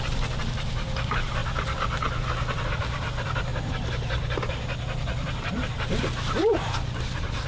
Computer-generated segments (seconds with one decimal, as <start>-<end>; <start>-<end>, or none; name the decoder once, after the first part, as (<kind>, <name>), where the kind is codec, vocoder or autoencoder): 0.0-1.4 (vocoder, BigVGAN v2); 2.5-7.5